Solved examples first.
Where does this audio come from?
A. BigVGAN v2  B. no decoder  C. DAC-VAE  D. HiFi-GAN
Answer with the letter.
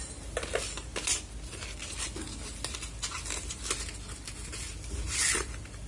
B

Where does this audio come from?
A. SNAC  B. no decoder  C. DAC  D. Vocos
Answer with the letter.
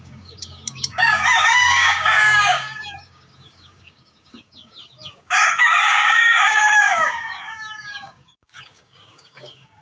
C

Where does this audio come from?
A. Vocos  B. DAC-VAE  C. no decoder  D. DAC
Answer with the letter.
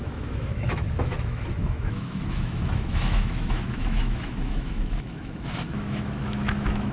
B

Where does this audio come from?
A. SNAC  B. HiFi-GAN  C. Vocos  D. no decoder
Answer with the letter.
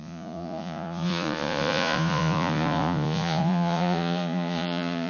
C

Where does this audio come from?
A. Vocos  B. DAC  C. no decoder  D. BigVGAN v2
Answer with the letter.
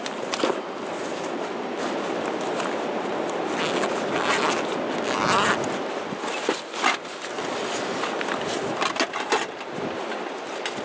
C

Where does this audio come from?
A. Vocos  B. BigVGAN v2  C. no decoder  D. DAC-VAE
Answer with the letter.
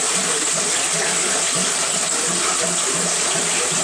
C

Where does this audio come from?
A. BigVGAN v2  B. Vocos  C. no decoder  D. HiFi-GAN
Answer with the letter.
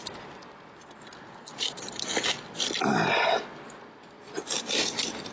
C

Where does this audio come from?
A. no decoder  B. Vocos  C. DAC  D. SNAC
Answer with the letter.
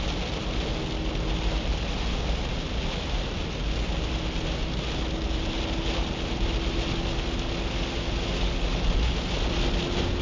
A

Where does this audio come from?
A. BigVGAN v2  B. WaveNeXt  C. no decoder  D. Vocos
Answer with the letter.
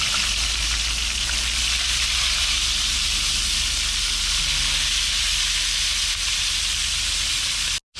C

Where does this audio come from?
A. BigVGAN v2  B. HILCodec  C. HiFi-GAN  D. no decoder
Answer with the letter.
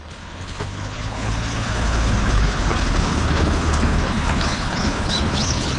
B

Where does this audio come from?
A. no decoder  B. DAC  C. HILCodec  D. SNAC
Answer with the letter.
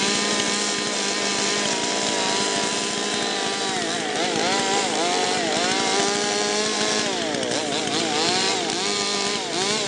A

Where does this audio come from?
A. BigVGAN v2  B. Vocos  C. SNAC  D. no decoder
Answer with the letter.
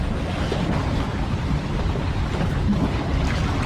D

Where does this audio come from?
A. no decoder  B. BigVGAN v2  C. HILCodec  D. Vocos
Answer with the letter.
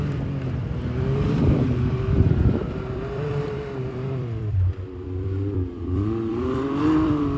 B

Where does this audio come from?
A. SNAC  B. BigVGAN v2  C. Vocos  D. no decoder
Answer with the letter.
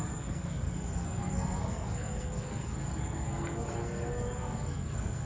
A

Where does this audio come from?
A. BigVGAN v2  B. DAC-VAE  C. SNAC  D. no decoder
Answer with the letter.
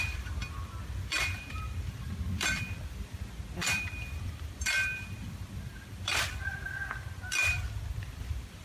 A